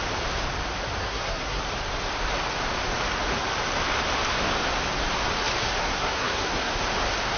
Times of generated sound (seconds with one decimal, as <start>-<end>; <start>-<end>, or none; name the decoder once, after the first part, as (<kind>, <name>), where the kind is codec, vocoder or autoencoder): 1.0-1.6 (codec, SNAC); 5.8-6.7